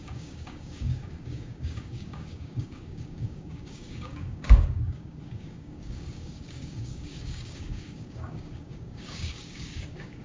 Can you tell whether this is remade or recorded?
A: remade